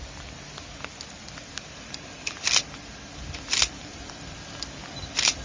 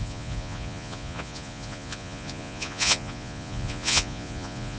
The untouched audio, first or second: first